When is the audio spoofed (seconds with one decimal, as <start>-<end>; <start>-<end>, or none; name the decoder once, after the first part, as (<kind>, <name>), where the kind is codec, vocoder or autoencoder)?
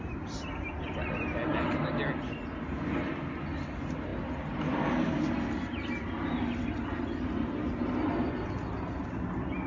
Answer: none